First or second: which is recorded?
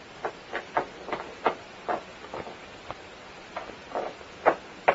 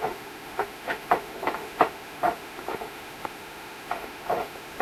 first